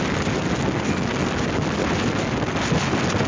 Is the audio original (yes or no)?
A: yes